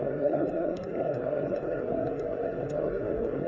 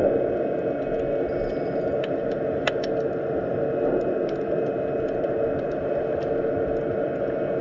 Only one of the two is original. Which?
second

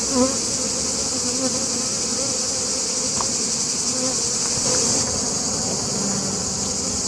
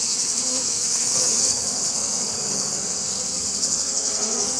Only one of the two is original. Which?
first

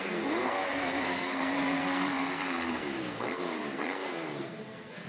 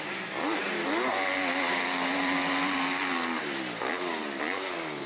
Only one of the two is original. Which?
second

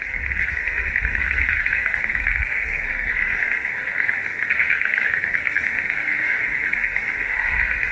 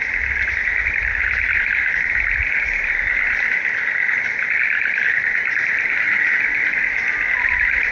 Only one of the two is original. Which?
second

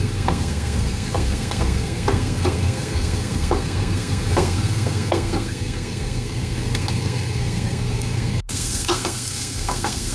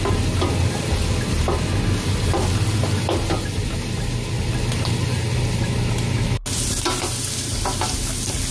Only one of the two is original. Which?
second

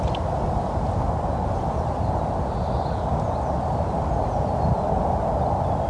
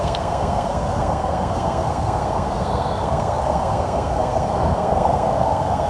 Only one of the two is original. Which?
first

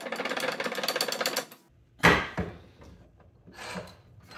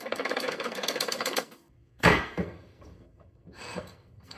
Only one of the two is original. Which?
first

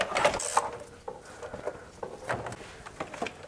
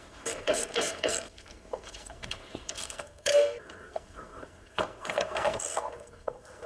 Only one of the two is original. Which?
first